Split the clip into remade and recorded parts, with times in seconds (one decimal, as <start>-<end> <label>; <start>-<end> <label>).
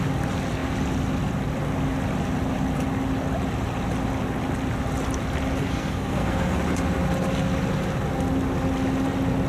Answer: 0.0-5.6 recorded; 5.6-6.6 remade; 6.6-9.5 recorded